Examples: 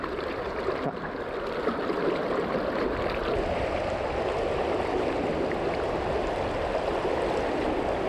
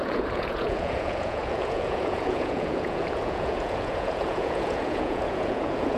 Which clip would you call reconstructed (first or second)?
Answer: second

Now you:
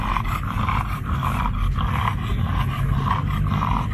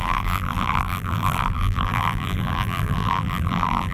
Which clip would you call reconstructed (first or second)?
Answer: second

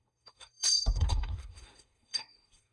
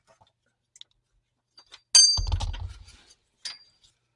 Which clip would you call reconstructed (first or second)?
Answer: first